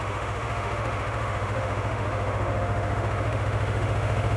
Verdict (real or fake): fake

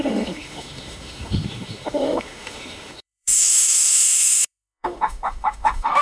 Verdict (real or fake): fake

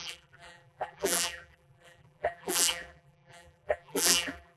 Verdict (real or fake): fake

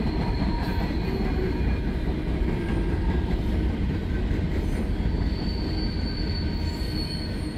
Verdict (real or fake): real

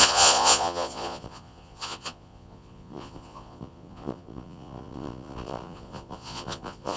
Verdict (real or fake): fake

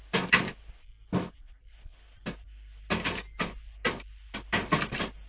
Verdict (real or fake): real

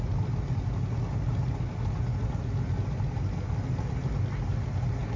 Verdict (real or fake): real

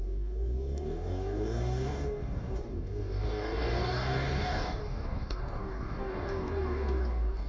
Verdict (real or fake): fake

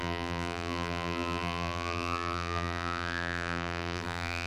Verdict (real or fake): fake